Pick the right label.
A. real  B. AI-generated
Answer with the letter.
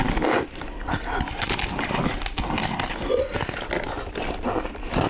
A